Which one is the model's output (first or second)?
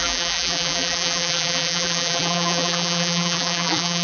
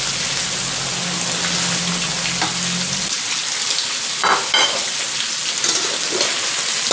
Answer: first